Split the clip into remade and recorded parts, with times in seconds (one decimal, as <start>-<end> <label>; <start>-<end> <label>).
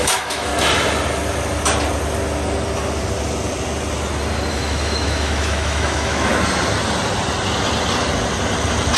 0.0-0.5 remade; 0.5-4.5 recorded; 4.5-6.3 remade; 6.3-9.0 recorded